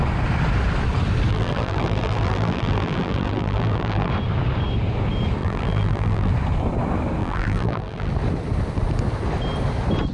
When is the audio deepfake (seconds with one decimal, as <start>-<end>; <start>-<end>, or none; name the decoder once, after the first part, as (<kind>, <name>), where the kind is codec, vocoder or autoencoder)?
1.3-4.1 (vocoder, BigVGAN v2); 5.4-6.3; 7.2-8.1